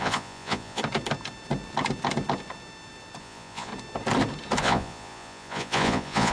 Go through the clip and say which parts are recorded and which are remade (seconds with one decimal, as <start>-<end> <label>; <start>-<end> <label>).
0.0-0.8 remade; 0.8-3.2 recorded; 3.2-3.7 remade; 3.7-4.6 recorded; 4.6-6.3 remade